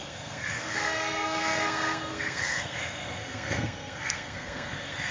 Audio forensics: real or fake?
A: fake